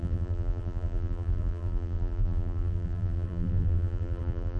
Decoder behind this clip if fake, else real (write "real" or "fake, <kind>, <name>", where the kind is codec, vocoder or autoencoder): fake, vocoder, BigVGAN v2